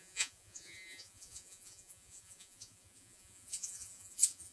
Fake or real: fake